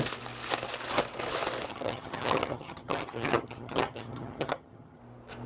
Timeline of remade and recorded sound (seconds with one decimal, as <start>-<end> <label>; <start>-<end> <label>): 0.0-1.7 recorded; 1.7-5.0 remade; 5.0-5.5 recorded